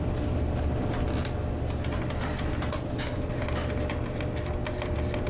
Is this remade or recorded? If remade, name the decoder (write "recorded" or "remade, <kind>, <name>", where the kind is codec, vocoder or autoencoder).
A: recorded